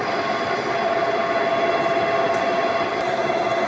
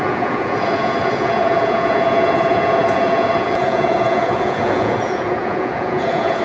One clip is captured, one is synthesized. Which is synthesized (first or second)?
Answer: second